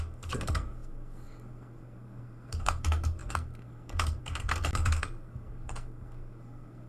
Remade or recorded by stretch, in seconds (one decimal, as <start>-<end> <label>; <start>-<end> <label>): 0.0-6.9 remade